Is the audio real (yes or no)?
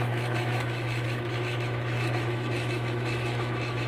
no